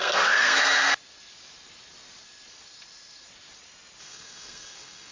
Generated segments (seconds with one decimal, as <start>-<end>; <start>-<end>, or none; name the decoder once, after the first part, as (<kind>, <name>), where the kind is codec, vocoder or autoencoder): 0.0-0.9 (codec, SNAC); 4.0-5.1